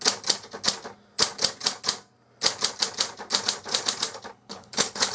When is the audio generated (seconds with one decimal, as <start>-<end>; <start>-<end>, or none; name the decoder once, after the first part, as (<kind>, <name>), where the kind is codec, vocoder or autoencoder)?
4.3-5.1 (codec, HILCodec)